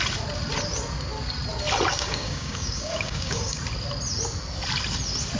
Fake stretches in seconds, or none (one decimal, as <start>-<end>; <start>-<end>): 1.9-3.6